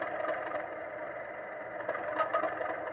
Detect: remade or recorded recorded